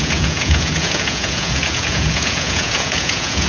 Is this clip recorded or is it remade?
remade